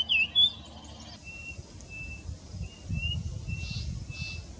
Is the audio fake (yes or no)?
no